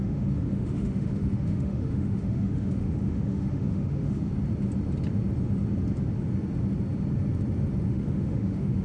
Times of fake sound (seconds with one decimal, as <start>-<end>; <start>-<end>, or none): 0.0-4.3; 7.9-8.8